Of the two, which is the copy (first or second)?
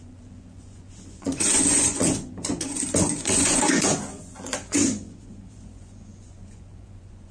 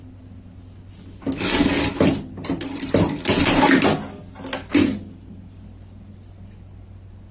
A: first